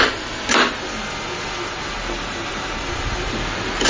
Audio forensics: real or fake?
real